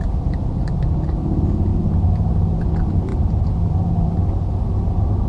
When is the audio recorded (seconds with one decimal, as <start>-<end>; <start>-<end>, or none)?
0.0-5.3